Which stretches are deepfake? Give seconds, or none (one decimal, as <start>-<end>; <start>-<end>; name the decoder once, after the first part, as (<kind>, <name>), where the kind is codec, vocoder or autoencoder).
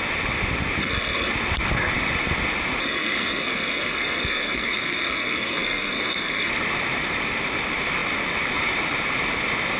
0.8-1.3 (codec, SNAC); 2.8-6.5